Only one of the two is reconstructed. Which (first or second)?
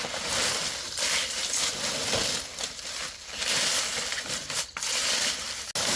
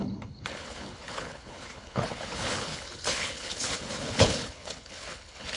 second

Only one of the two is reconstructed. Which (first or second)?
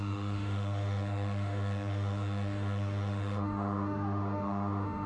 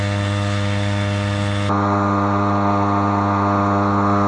first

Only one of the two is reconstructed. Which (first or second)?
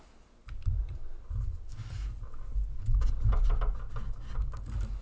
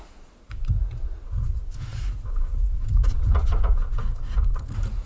second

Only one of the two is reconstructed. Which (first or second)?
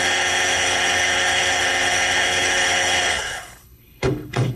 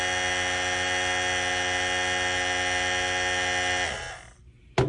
first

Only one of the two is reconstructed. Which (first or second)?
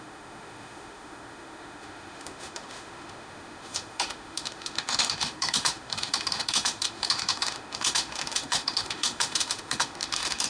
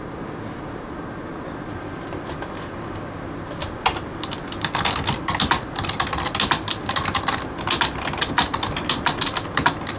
first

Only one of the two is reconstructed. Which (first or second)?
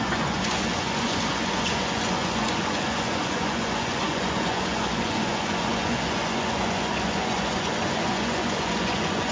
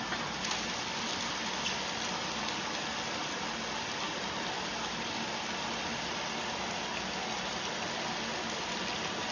first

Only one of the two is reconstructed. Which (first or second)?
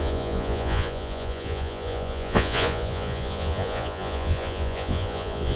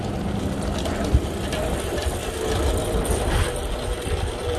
first